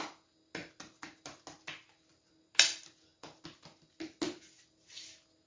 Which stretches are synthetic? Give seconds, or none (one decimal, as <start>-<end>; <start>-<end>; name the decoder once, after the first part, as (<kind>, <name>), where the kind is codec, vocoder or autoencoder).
none